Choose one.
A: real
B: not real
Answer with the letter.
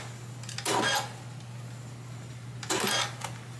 A